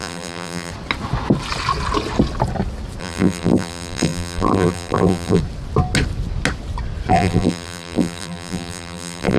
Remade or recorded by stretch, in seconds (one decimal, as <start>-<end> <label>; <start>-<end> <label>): 0.0-0.7 remade; 0.7-3.0 recorded; 3.0-5.4 remade; 5.4-7.1 recorded; 7.1-9.4 remade